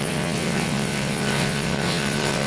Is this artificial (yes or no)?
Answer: yes